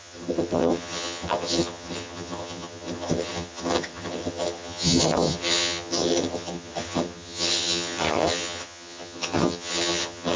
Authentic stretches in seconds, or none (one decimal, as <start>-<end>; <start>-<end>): none